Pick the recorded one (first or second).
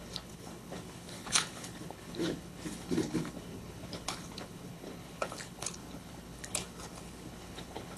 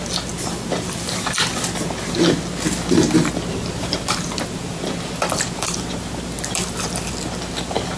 second